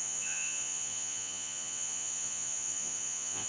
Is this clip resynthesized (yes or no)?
yes